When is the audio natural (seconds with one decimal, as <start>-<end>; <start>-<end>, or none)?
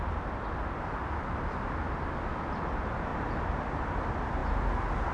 0.0-3.1; 3.8-5.1